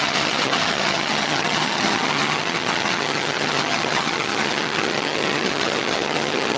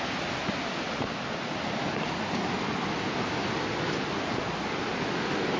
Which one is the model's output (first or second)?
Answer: first